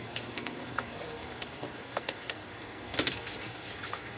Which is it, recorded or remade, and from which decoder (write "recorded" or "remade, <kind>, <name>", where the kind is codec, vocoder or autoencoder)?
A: remade, codec, SNAC